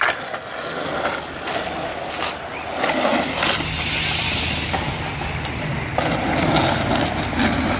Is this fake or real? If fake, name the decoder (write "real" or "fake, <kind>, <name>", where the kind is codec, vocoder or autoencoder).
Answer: real